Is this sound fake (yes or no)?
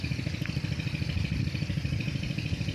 no